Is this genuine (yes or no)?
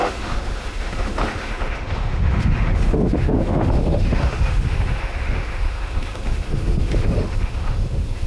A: no